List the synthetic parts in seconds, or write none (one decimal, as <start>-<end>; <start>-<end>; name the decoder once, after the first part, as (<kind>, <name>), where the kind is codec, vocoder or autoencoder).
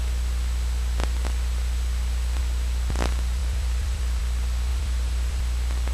3.4-4.2 (vocoder, BigVGAN v2); 4.7-5.4